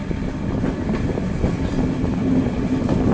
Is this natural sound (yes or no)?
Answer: yes